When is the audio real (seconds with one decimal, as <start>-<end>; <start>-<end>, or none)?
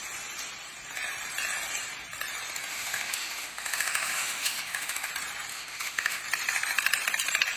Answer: 0.0-2.7; 5.1-5.5; 6.2-7.6